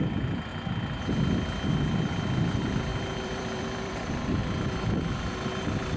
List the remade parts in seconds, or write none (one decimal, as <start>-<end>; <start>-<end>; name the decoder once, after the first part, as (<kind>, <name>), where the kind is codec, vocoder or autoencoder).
0.0-4.4 (vocoder, BigVGAN v2); 5.6-6.0